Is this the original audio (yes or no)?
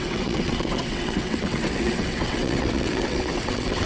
no